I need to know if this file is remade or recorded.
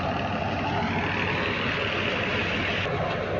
recorded